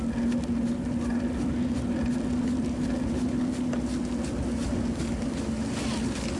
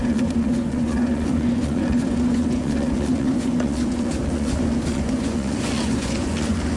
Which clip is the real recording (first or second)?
first